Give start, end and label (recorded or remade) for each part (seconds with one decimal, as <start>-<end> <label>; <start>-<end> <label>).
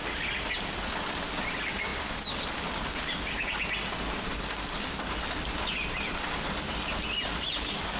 0.0-8.0 recorded